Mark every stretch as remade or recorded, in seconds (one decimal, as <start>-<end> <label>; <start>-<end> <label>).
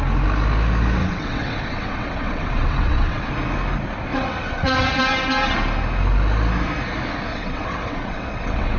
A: 0.0-1.0 recorded; 1.0-3.3 remade; 3.3-4.1 recorded; 4.1-5.0 remade; 5.0-7.3 recorded; 7.3-8.8 remade